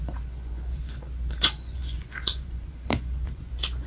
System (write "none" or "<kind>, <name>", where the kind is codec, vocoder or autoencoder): vocoder, Vocos